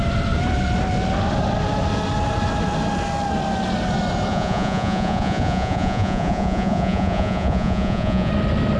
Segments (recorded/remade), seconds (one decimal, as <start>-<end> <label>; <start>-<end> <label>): 0.0-4.3 recorded; 4.3-8.3 remade; 8.3-8.8 recorded